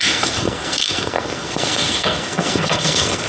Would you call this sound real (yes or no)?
no